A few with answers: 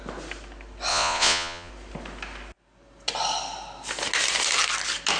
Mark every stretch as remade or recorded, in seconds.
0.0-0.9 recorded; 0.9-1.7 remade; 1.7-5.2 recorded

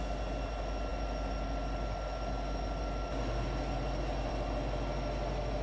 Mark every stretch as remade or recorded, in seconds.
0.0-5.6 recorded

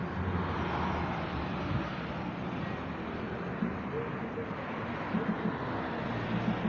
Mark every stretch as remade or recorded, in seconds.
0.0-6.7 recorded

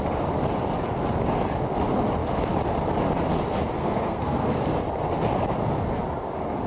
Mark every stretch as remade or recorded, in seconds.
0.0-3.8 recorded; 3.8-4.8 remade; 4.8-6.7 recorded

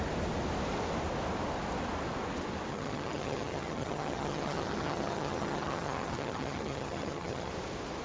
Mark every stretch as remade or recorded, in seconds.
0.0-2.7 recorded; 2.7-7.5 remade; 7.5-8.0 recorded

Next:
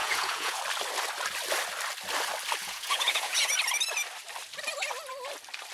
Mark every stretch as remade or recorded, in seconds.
0.0-0.6 remade; 0.6-2.6 recorded; 2.6-3.5 remade; 3.5-5.7 recorded

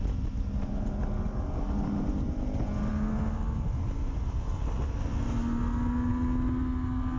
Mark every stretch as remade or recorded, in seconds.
0.0-7.2 recorded